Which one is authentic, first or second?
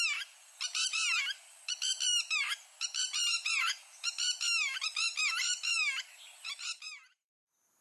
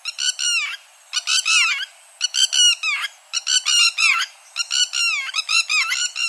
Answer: second